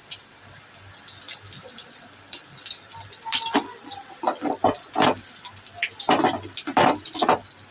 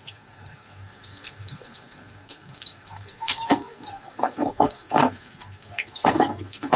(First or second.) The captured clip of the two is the first